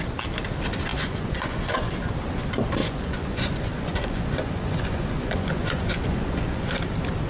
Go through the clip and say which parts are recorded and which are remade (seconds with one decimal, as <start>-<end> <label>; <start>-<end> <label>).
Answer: 0.0-0.9 recorded; 0.9-1.9 remade; 1.9-2.8 recorded; 2.8-6.8 remade; 6.8-7.3 recorded